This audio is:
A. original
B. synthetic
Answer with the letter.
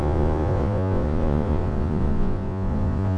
B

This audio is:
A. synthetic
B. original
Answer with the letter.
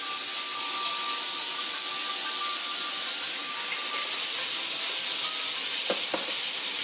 B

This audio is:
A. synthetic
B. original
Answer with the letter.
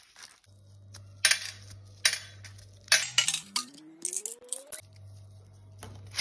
B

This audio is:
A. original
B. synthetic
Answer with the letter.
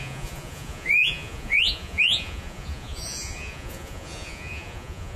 B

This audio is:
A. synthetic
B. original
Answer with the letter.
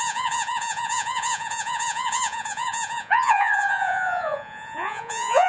A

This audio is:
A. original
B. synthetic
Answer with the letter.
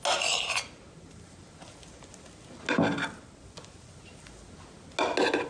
A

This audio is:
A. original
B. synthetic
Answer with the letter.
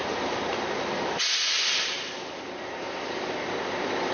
A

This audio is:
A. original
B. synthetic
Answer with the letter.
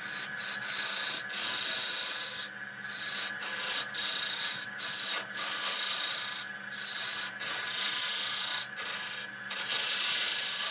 A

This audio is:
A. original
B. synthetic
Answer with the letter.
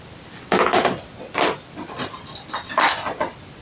A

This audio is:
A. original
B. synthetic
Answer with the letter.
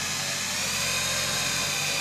A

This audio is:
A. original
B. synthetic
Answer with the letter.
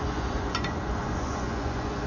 B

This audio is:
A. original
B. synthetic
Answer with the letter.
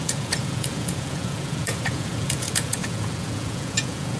B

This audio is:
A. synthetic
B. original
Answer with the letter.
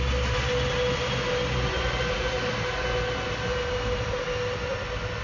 B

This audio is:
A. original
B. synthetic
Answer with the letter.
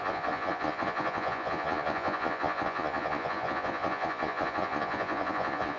B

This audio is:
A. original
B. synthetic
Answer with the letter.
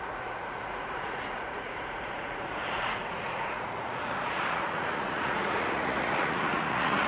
B